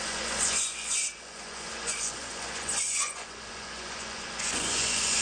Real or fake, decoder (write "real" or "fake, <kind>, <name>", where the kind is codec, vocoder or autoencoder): fake, vocoder, Vocos